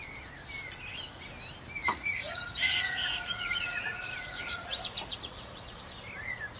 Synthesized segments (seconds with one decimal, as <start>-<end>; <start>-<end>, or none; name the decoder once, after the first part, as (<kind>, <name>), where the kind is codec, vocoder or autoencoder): 1.8-5.8 (vocoder, Vocos)